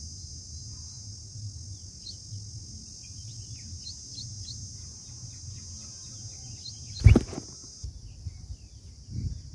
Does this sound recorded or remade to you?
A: recorded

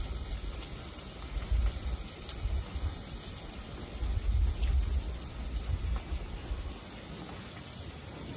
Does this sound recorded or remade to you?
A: recorded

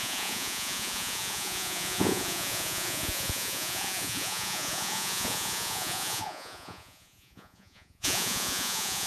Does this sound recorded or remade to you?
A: remade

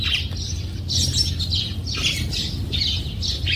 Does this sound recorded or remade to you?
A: recorded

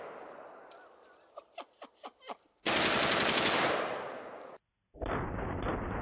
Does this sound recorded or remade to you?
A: recorded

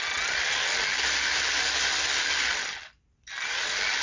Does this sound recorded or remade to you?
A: recorded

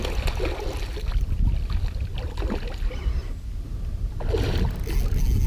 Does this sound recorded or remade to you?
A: recorded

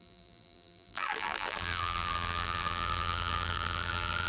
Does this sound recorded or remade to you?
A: remade